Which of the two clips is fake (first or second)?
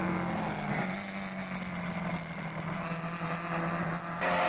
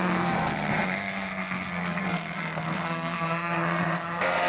second